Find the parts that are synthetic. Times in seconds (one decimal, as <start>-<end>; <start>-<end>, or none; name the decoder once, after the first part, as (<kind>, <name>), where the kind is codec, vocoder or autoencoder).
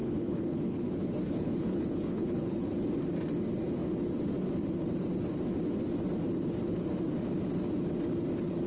0.0-2.7 (codec, HILCodec)